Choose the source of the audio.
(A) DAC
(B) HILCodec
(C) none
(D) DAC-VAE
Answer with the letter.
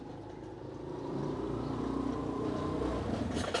C